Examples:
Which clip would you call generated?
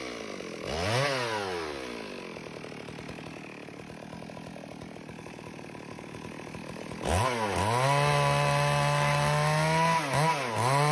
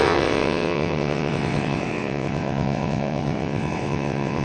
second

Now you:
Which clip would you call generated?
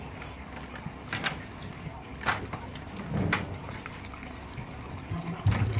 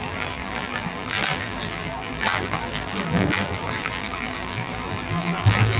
second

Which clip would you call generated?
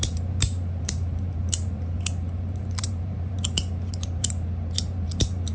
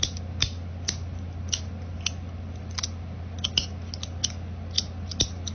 first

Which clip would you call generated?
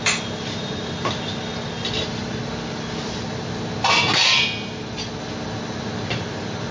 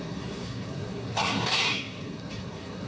second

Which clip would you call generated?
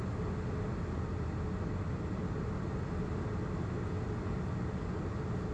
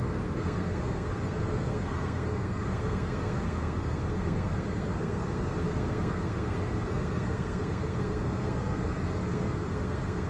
second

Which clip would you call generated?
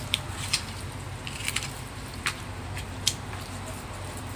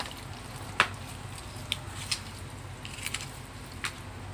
first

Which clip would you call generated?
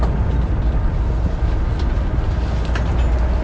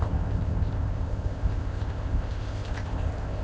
second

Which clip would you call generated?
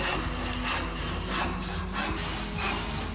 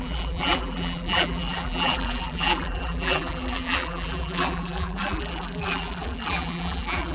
second